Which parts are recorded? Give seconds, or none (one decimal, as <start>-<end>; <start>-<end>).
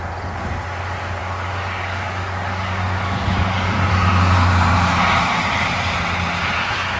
0.0-1.2; 3.9-7.0